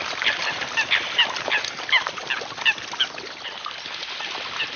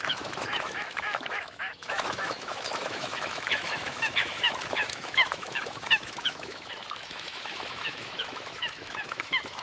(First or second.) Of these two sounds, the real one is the first